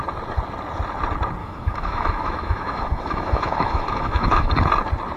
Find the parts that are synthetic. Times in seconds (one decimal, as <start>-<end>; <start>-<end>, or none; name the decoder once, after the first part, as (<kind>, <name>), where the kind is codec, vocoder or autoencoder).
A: 1.4-4.5 (autoencoder, DAC-VAE)